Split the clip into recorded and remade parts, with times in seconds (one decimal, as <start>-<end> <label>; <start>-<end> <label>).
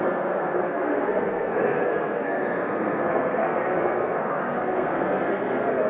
0.0-5.9 remade